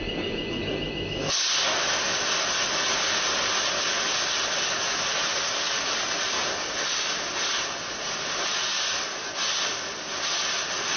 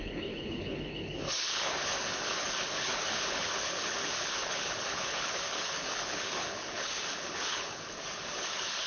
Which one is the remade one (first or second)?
second